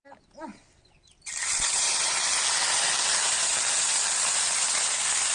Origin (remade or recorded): recorded